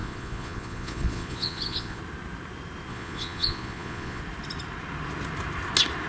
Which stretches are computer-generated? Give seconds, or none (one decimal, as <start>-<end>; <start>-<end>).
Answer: 0.0-2.0; 2.9-4.2